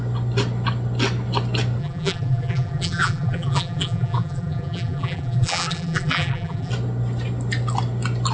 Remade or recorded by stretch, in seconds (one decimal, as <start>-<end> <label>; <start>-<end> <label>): 0.0-1.8 recorded; 1.8-6.7 remade; 6.7-8.3 recorded